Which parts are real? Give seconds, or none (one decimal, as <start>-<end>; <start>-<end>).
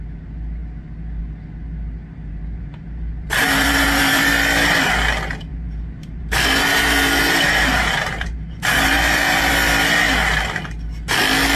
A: 0.0-2.1; 4.3-5.5; 9.5-11.6